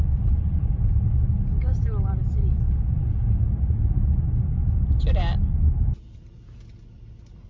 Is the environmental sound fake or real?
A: real